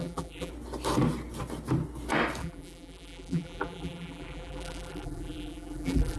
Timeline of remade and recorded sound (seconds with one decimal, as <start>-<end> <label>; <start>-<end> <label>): 0.0-0.5 remade; 0.5-2.4 recorded; 2.4-6.2 remade